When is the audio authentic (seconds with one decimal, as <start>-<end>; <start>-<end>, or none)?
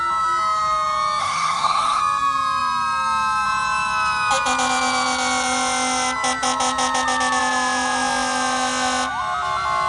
0.0-1.2; 2.0-9.9